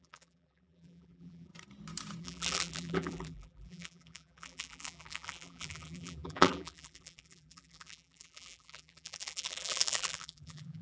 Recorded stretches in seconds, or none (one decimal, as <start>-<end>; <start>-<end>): 1.5-2.2